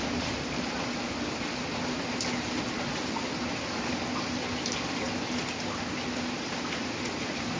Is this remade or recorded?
recorded